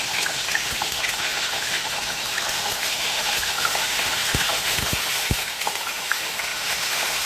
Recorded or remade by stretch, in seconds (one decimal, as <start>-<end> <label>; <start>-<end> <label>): 0.0-7.3 remade